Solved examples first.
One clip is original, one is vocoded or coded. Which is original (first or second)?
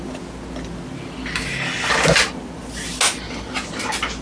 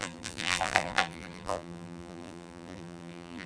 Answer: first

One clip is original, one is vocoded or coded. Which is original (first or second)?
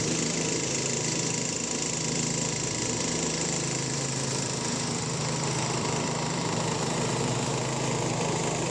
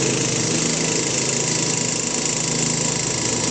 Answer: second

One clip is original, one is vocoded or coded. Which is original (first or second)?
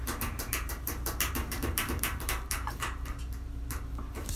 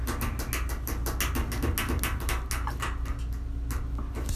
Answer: second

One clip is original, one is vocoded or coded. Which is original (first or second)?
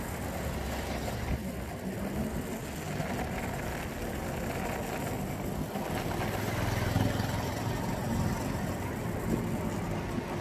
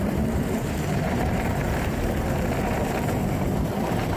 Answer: first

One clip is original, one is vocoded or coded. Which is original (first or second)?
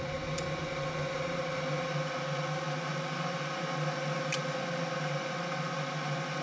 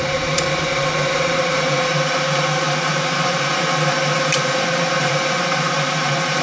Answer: first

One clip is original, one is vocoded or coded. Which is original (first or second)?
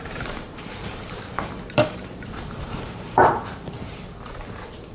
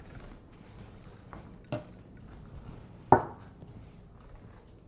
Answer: second